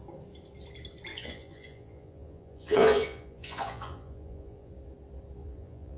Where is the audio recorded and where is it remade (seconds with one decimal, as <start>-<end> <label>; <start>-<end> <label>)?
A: 0.0-1.1 recorded; 1.1-4.7 remade; 4.7-5.4 recorded; 5.4-6.0 remade